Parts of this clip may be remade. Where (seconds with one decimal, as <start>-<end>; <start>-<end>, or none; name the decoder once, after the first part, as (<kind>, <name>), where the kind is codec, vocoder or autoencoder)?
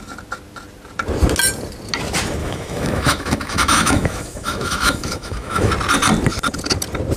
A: 2.4-5.7 (autoencoder, DAC-VAE)